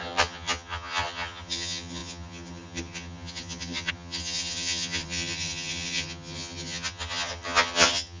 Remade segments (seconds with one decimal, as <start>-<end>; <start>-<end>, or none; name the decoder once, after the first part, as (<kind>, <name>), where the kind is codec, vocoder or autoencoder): 0.0-8.2 (vocoder, HiFi-GAN)